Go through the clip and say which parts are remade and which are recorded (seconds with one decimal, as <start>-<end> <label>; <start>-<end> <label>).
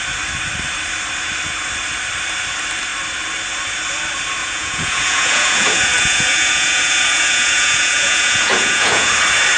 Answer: 0.0-4.4 recorded; 4.4-9.1 remade; 9.1-9.6 recorded